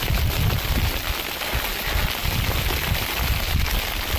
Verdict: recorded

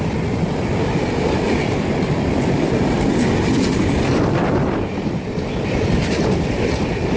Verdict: remade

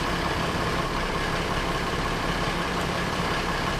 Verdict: remade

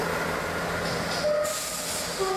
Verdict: recorded